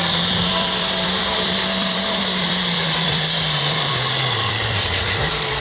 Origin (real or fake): fake